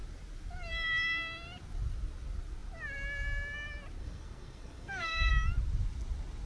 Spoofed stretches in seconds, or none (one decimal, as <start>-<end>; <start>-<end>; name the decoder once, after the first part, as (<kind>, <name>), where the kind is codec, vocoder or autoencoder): 4.0-5.3 (codec, SNAC)